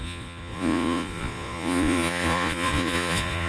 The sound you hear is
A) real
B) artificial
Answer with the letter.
B